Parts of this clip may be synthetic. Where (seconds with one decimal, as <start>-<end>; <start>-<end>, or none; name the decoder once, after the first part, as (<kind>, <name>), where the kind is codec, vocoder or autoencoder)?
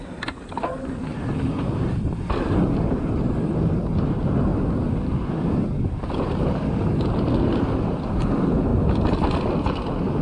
none